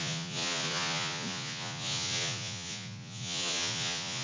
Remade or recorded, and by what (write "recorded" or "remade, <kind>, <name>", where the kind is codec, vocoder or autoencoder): remade, vocoder, Vocos